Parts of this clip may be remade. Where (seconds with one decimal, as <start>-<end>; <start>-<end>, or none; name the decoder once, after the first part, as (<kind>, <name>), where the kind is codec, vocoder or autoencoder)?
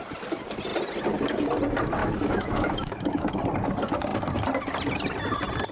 2.0-3.4 (autoencoder, DAC-VAE)